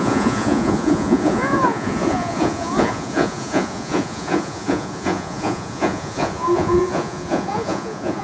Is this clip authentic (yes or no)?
no